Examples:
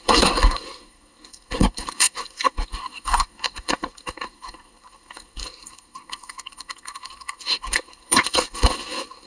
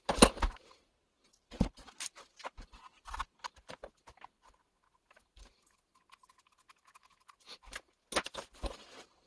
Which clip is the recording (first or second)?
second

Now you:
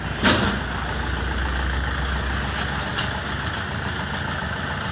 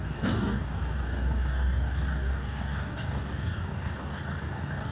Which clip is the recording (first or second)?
first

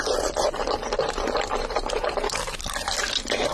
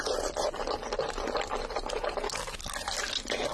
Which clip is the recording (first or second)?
second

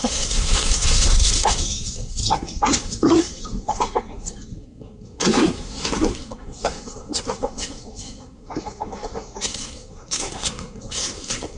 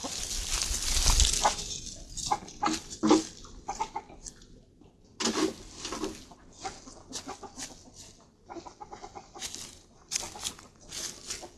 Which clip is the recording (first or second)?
second